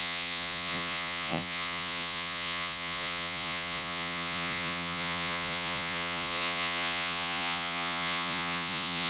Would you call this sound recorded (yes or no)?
no